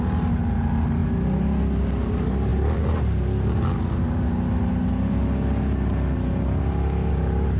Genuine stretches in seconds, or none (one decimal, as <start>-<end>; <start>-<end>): 0.0-7.6